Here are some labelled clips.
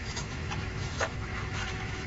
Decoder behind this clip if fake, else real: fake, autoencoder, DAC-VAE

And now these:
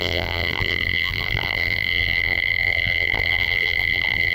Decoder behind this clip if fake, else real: fake, vocoder, BigVGAN v2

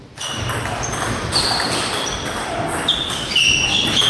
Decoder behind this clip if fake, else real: real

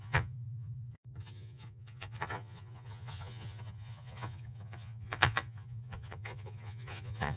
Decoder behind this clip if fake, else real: fake, vocoder, Vocos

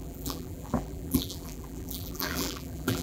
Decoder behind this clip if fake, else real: fake, vocoder, BigVGAN v2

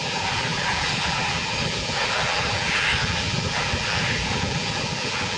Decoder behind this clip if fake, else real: fake, vocoder, BigVGAN v2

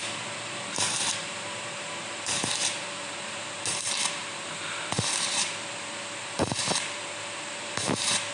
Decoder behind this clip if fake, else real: fake, vocoder, BigVGAN v2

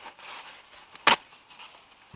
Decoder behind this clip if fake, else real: real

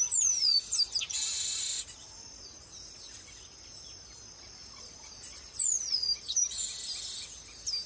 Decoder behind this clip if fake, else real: real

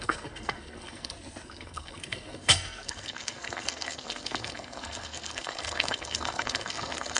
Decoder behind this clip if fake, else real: fake, codec, SNAC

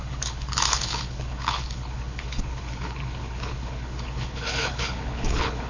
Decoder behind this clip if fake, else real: fake, codec, HILCodec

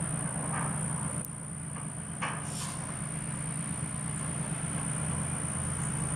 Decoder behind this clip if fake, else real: real